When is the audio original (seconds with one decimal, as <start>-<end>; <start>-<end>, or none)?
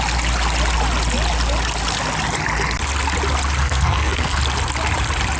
0.0-3.6; 4.4-5.4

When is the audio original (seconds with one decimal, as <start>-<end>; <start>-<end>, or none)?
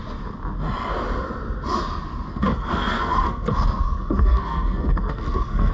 0.0-2.3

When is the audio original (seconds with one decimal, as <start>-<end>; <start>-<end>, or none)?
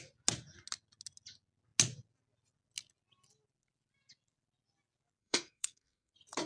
0.0-5.2; 6.1-6.5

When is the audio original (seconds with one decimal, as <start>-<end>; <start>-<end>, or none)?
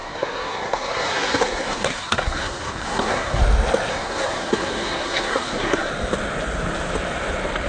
3.4-3.9; 5.9-7.7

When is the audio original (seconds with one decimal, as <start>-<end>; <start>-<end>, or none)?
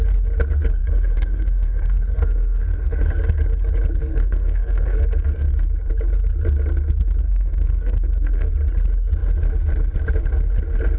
0.0-0.8; 3.1-4.0; 5.5-7.2; 8.5-11.0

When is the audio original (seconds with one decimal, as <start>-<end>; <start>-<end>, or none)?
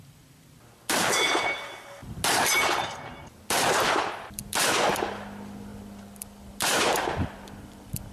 0.0-8.1